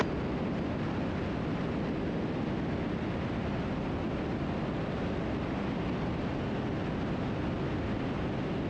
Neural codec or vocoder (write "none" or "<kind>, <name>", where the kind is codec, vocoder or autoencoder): none